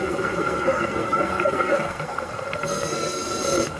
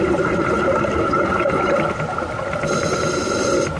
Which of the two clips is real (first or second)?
second